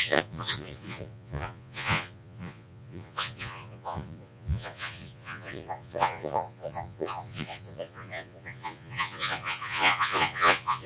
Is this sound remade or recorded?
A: remade